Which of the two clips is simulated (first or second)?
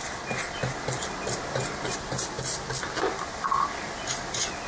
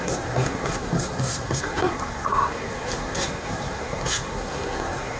second